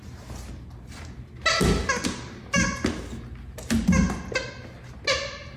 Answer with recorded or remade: recorded